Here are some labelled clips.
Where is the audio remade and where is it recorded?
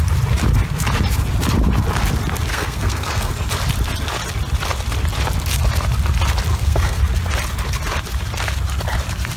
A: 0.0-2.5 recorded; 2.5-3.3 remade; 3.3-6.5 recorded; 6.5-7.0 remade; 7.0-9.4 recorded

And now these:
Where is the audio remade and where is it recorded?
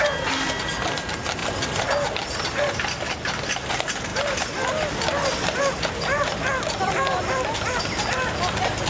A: 0.0-8.9 recorded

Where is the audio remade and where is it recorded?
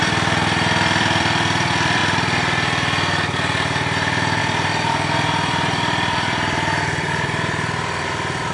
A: 0.0-2.0 remade; 2.0-4.4 recorded; 4.4-8.5 remade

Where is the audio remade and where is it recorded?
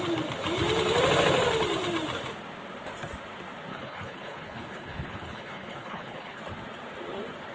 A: 0.0-3.7 recorded; 3.7-6.4 remade; 6.4-7.5 recorded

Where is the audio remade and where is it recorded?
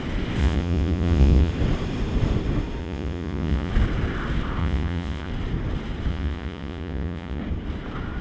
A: 0.0-0.4 recorded; 0.4-1.5 remade; 1.5-2.8 recorded; 2.8-3.7 remade; 3.7-4.6 recorded; 4.6-5.3 remade; 5.3-6.1 recorded; 6.1-7.4 remade; 7.4-8.2 recorded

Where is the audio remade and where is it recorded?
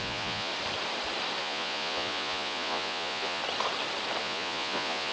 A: 0.0-0.5 remade; 0.5-1.4 recorded; 1.4-3.4 remade; 3.4-4.2 recorded; 4.2-5.1 remade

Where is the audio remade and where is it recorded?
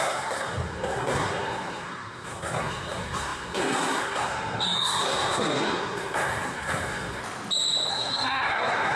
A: 0.0-7.2 remade; 7.2-7.9 recorded; 7.9-9.0 remade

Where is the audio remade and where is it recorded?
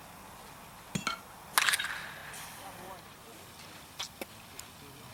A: 0.0-5.1 recorded